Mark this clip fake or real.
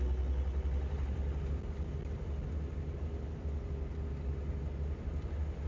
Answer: real